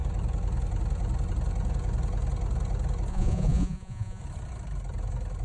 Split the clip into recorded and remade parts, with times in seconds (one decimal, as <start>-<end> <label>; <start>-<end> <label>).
0.0-3.1 recorded; 3.1-4.2 remade; 4.2-5.4 recorded